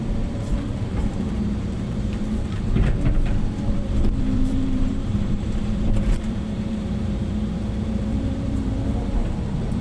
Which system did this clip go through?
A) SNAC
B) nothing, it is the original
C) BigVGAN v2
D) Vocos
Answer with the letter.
C